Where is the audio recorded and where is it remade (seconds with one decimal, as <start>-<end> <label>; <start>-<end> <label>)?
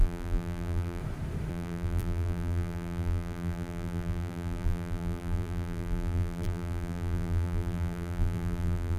0.0-1.0 remade; 1.0-1.5 recorded; 1.5-9.0 remade